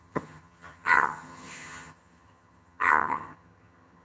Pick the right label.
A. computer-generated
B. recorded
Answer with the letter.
A